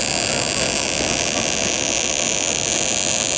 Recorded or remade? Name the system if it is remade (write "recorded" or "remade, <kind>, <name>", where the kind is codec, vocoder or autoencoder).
recorded